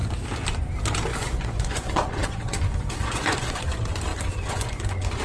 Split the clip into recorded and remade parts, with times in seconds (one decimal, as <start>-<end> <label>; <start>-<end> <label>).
0.0-1.1 recorded; 1.1-3.6 remade; 3.6-4.1 recorded; 4.1-5.2 remade